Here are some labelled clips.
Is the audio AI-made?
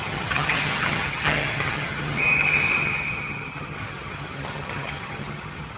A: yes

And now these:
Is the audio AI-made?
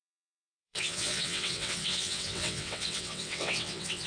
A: yes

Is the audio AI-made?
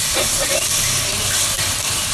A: no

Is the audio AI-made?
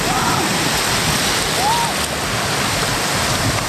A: no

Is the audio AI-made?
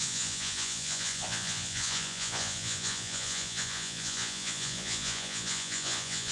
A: yes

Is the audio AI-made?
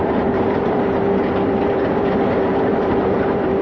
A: yes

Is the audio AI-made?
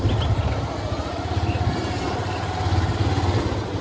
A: no